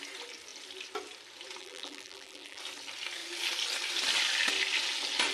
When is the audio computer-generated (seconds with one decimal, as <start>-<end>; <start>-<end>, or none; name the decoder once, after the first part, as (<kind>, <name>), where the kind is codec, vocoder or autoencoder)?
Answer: 1.6-2.6 (vocoder, BigVGAN v2)